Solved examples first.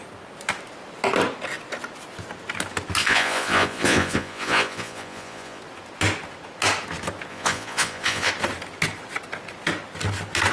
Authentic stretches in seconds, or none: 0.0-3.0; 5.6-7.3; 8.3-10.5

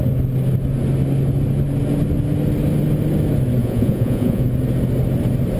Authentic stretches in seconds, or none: 0.0-3.6; 4.4-5.6